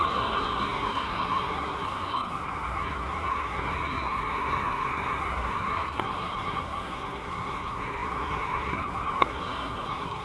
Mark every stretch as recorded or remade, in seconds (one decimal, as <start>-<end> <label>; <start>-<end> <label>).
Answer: 0.0-10.2 remade